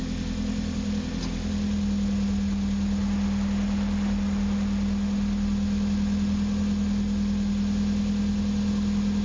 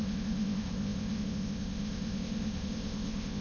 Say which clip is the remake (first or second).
second